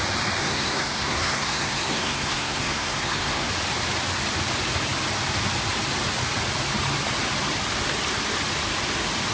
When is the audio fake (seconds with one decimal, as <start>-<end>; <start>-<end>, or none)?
0.4-3.5